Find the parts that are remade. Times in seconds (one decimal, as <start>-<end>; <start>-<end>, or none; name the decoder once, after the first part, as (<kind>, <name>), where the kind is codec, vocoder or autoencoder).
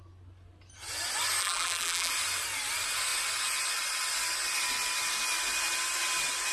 1.4-2.1 (vocoder, BigVGAN v2)